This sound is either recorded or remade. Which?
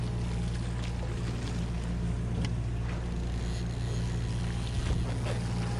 recorded